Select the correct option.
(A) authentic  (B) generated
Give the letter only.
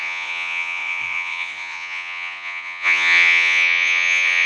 B